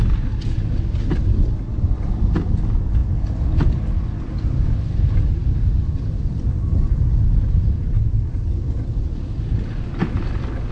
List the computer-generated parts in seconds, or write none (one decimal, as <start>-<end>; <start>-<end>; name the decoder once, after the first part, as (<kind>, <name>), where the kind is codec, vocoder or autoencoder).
none